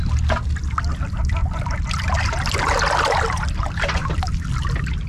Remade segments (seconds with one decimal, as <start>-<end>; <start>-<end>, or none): none